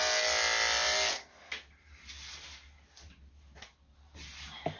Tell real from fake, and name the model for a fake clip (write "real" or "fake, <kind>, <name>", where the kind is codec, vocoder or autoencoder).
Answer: real